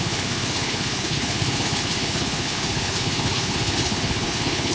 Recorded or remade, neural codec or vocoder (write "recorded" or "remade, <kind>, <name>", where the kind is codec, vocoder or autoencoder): remade, codec, HILCodec